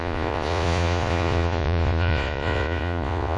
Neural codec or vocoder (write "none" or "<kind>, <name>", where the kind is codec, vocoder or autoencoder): vocoder, Vocos